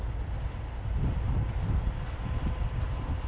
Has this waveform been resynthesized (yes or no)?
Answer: no